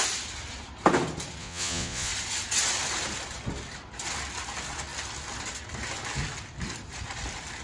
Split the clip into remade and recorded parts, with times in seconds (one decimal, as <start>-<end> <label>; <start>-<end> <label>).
0.0-1.4 recorded; 1.4-2.1 remade; 2.1-7.6 recorded